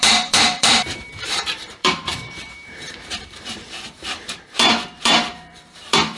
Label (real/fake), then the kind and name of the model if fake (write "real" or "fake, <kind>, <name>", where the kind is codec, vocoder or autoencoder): fake, vocoder, BigVGAN v2